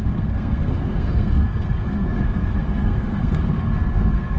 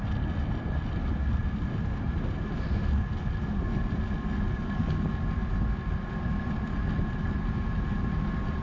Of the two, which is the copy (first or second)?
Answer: first